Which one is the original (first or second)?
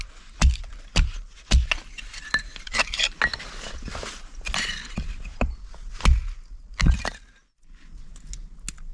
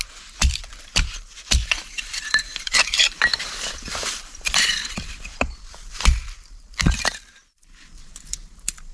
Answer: first